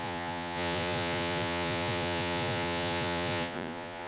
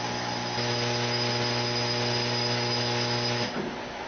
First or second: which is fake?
first